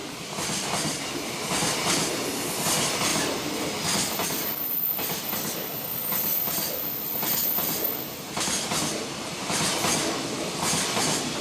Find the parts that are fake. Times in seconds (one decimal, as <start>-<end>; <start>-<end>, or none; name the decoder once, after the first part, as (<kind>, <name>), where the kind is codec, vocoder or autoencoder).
none